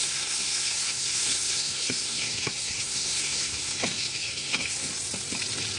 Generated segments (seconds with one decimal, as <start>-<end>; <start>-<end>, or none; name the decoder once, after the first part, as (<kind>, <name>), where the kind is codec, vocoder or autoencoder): 0.0-4.9 (codec, SNAC)